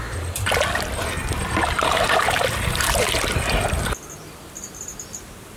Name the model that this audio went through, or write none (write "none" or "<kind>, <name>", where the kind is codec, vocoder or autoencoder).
none